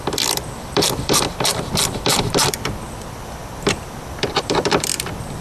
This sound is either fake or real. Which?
fake